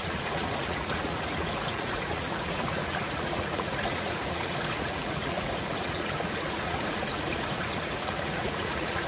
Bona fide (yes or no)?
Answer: no